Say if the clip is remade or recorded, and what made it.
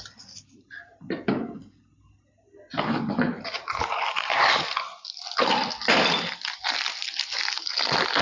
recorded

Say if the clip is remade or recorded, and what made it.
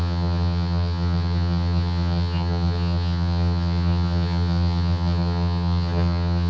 remade, vocoder, HiFi-GAN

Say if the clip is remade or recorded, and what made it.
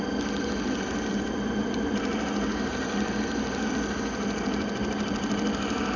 recorded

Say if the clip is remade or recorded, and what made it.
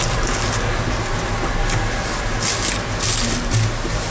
recorded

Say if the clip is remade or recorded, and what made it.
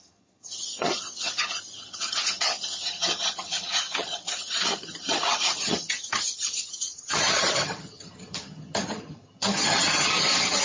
remade, vocoder, HiFi-GAN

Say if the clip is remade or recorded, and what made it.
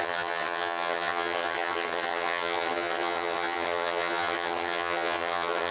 remade, vocoder, HiFi-GAN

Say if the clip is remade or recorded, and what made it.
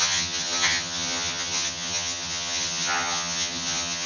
remade, vocoder, HiFi-GAN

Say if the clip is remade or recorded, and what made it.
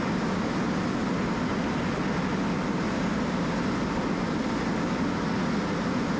recorded